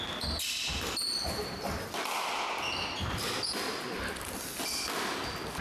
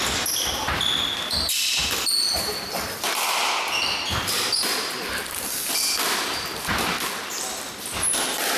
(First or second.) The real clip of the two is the first